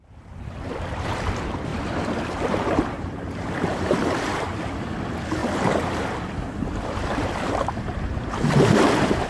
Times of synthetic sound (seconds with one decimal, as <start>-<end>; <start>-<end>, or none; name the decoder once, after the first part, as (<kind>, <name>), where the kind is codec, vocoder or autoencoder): 1.7-4.7 (vocoder, BigVGAN v2); 5.4-8.3